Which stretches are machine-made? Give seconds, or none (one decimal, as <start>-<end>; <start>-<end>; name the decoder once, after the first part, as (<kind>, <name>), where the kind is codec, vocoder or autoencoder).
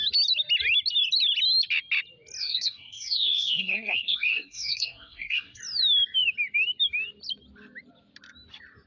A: 2.4-5.6 (codec, SNAC)